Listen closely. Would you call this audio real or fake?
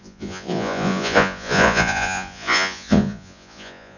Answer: fake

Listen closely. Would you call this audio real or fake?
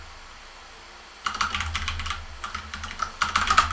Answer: real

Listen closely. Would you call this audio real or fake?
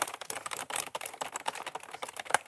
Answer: fake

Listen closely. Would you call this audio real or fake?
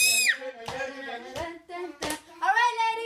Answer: fake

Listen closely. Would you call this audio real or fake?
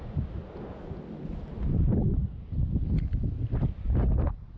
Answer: real